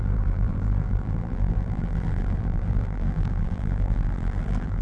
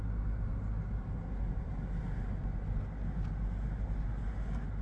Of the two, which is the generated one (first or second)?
first